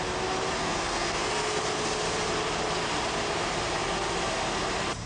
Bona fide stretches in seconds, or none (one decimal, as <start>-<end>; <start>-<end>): 0.0-0.6; 1.6-5.1